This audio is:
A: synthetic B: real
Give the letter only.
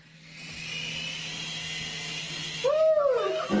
B